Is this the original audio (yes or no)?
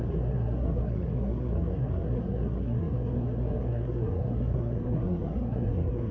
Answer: no